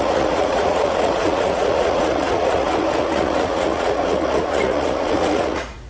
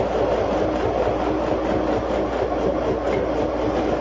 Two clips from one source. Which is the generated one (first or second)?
first